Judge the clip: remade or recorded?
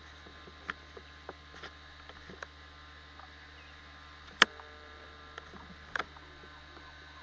remade